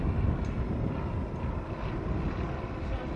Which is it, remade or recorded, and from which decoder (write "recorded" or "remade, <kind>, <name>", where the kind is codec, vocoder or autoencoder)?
recorded